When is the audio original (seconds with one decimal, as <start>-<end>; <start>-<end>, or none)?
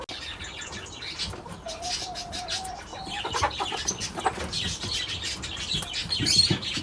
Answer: 0.0-2.9; 3.9-6.0